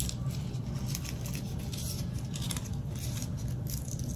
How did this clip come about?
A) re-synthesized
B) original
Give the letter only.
B